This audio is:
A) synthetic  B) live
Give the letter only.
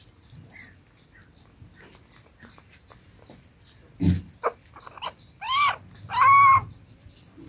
B